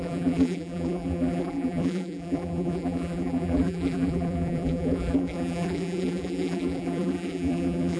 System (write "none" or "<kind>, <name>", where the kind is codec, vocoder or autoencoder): vocoder, BigVGAN v2